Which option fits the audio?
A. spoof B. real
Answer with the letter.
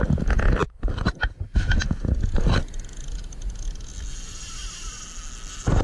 B